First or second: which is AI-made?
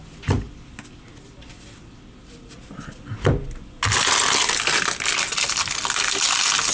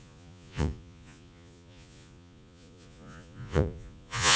second